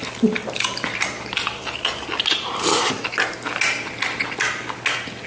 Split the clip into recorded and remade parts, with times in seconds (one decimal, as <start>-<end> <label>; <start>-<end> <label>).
0.0-5.3 recorded